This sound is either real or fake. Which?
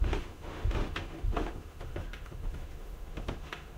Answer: fake